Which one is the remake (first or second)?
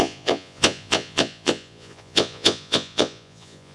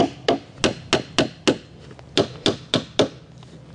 first